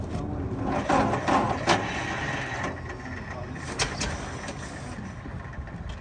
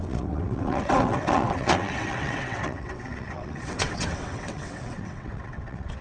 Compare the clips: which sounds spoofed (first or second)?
second